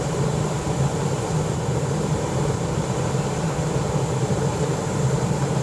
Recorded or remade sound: remade